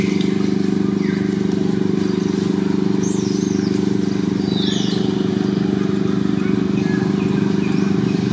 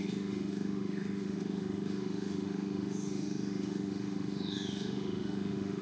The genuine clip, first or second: first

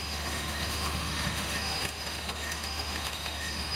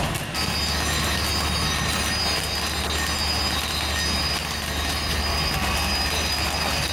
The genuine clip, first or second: second